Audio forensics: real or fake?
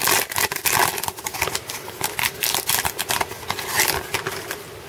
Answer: real